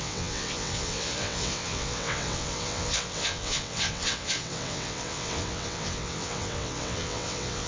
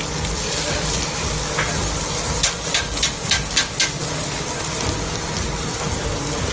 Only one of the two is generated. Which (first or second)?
first